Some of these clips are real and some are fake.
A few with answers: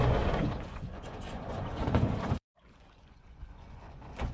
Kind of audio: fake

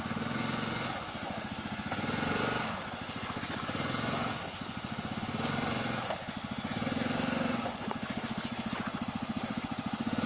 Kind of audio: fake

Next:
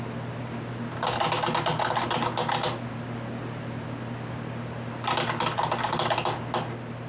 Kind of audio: real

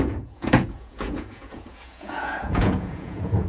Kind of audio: fake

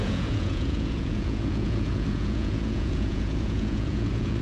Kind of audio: fake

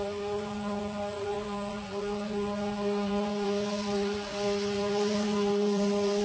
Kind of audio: fake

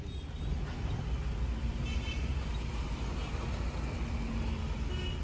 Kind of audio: real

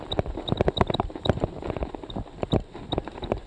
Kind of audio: real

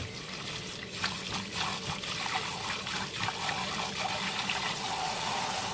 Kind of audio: real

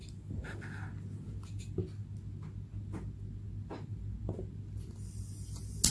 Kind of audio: real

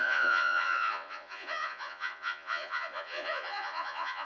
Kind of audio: fake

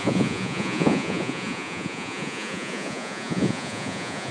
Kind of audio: fake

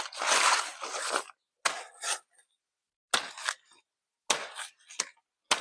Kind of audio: real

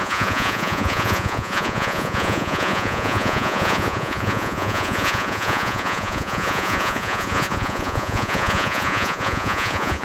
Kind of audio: fake